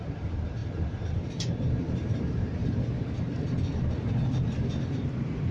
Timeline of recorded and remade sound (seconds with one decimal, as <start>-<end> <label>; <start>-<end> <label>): 0.0-2.6 remade; 2.6-4.8 recorded; 4.8-5.5 remade